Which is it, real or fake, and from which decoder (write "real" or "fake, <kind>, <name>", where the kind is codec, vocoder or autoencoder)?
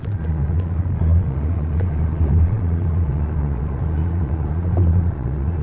fake, vocoder, Vocos